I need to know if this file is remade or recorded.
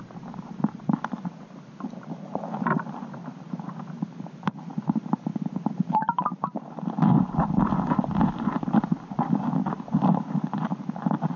remade